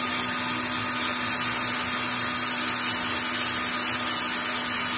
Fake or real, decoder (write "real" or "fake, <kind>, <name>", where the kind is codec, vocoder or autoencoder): real